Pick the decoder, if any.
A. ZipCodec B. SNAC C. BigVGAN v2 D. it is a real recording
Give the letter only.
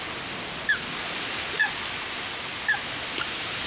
D